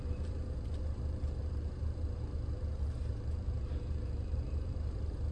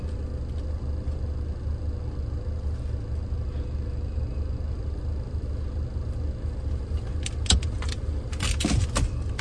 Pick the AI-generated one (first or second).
first